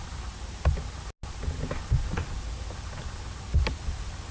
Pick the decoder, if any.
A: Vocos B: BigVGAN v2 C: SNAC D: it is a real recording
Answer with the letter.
D